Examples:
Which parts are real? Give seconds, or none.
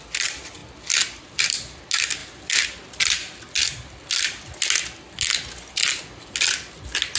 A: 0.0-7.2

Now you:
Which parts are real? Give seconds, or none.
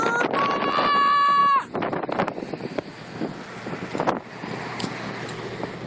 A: 0.0-5.9